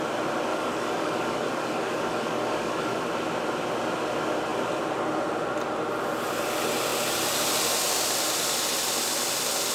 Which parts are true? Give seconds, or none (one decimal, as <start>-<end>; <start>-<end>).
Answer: 0.0-0.5; 3.0-9.7